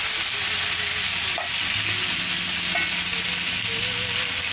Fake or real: real